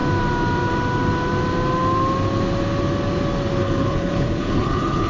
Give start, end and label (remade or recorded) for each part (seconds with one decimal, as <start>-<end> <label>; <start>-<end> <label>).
0.0-3.6 recorded; 3.6-5.1 remade